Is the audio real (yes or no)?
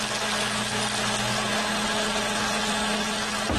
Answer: yes